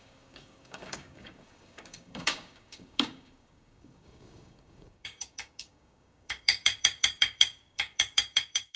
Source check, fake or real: fake